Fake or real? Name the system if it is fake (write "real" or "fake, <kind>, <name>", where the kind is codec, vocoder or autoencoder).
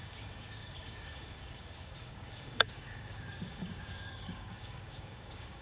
fake, codec, DAC